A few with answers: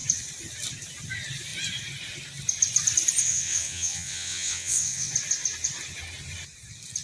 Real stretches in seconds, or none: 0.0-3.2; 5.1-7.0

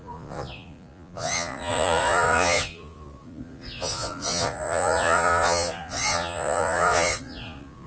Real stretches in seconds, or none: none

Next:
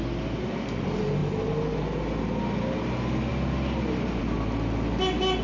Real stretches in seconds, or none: 0.0-5.4